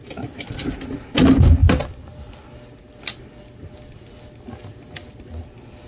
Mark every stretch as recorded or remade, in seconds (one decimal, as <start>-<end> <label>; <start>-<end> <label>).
0.0-5.9 recorded